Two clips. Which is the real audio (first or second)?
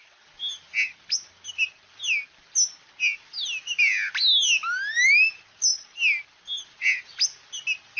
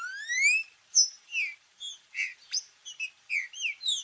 first